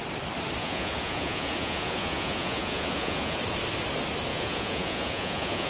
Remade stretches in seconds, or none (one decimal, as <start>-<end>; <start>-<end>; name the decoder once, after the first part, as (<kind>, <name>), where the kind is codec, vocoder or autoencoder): 0.6-3.4 (vocoder, Vocos); 4.3-5.7